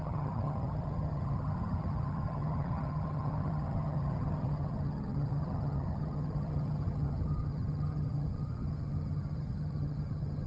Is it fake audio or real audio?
fake